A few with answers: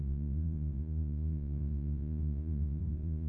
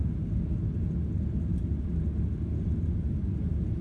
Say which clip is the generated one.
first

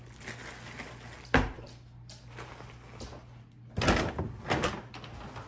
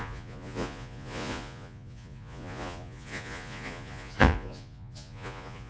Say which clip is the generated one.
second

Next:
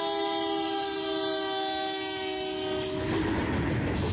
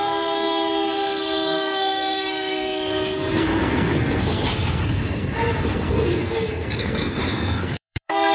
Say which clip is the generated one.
second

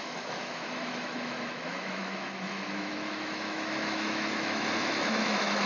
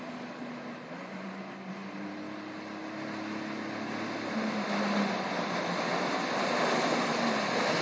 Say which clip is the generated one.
first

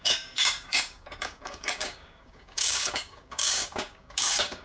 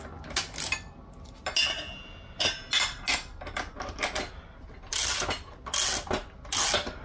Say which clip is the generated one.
first